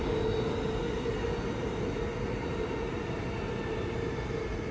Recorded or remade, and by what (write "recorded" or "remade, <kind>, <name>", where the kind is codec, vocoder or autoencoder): recorded